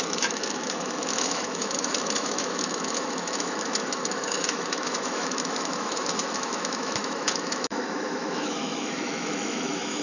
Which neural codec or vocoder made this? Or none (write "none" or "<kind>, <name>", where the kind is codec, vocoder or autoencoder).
autoencoder, DAC-VAE